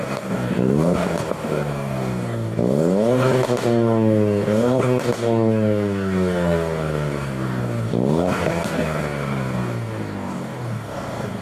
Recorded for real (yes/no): no